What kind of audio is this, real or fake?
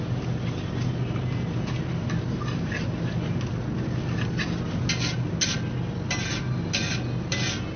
real